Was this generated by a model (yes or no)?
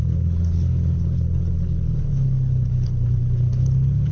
yes